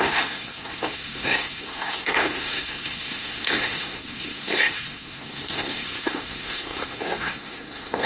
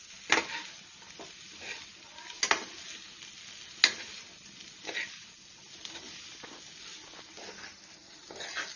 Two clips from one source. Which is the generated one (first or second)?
first